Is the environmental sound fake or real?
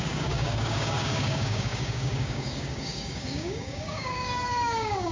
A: fake